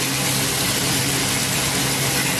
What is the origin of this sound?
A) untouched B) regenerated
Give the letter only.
A